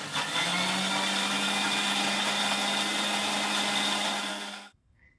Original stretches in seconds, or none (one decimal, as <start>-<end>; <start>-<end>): 0.0-4.3